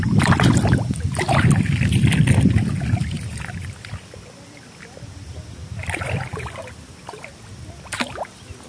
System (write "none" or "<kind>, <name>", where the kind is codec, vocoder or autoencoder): none